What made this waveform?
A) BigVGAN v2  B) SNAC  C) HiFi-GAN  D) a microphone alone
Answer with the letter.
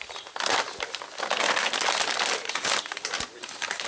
D